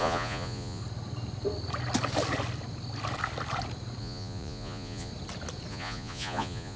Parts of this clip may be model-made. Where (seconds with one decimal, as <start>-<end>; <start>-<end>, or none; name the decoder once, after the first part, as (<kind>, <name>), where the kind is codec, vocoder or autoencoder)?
0.0-0.8 (vocoder, Vocos); 4.0-5.1; 5.7-6.8